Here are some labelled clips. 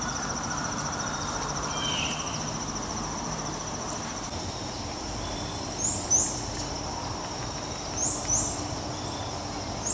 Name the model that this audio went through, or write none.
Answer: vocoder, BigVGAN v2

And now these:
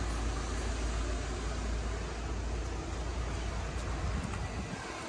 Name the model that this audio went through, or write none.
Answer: none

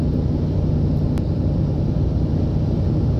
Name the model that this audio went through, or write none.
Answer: none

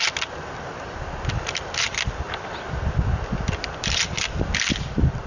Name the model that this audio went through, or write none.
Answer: none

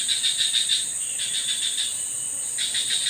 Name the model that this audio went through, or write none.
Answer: none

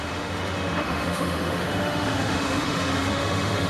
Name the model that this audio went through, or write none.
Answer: autoencoder, DAC-VAE